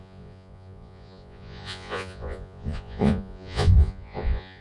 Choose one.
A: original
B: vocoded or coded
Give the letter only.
B